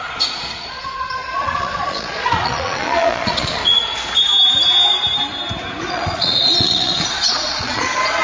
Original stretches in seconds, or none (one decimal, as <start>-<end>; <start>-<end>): 3.6-5.9